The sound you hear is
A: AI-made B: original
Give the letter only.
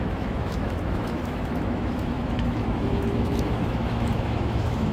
A